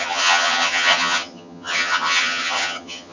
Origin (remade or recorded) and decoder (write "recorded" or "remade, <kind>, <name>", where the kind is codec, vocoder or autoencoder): remade, vocoder, HiFi-GAN